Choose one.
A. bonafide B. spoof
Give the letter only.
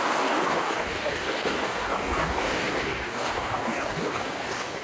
B